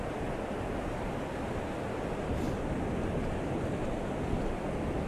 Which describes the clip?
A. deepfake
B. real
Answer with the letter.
B